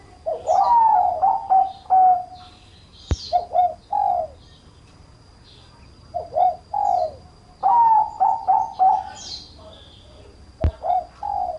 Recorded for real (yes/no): yes